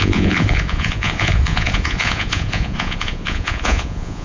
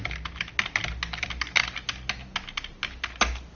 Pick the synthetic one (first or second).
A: first